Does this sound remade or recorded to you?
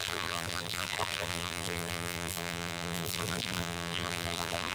remade